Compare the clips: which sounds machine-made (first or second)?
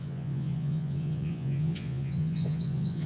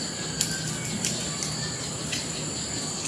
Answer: first